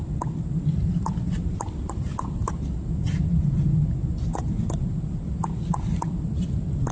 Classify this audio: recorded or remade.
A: recorded